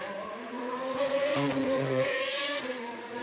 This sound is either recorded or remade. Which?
remade